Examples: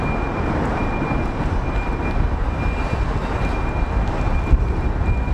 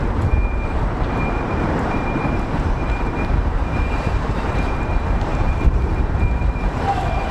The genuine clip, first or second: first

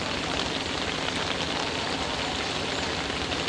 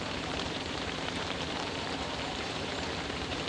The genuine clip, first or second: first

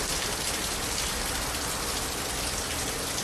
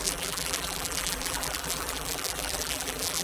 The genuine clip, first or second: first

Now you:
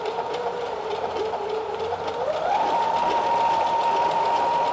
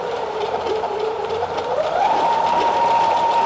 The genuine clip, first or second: first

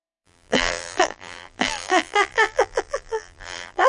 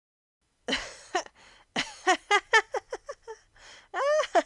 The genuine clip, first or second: second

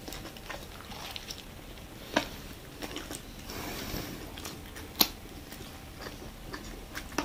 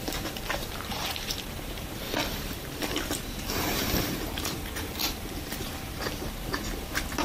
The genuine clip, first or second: first